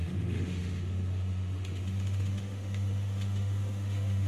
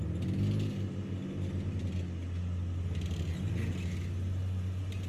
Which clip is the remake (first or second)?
first